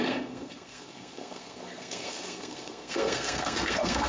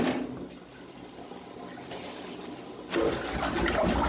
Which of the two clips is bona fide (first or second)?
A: second